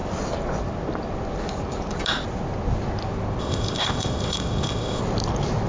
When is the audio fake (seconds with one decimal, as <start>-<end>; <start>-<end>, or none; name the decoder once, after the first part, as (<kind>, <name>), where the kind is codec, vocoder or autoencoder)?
3.4-5.0 (codec, ZipCodec)